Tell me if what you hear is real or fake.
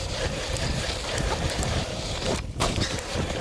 fake